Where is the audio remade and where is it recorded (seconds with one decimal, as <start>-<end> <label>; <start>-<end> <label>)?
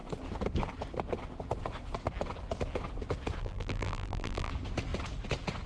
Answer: 0.0-3.4 recorded; 3.4-4.5 remade; 4.5-5.7 recorded